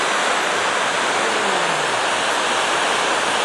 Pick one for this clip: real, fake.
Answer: real